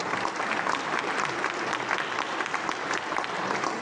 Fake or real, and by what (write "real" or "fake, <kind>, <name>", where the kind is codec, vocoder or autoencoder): real